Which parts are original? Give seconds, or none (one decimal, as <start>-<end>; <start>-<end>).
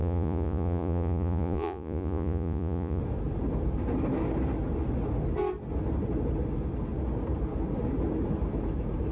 3.0-9.1